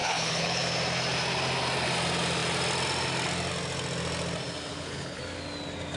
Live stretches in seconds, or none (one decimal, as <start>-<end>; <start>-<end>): 0.6-4.7; 5.2-6.0